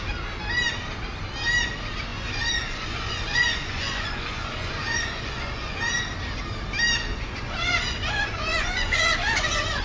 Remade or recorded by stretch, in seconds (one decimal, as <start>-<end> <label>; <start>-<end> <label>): 0.0-2.1 recorded; 2.1-5.8 remade; 5.8-7.1 recorded; 7.1-9.8 remade